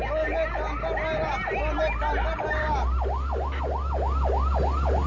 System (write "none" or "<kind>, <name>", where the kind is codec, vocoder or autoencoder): none